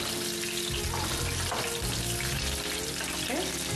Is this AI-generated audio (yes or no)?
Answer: no